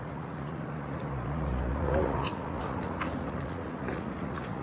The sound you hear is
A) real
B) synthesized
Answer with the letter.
B